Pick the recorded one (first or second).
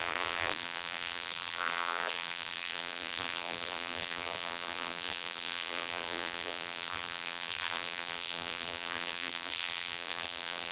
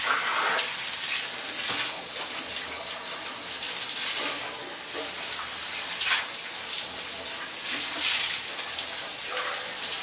second